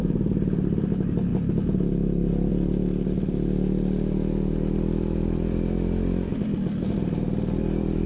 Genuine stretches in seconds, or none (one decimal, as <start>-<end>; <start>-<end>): none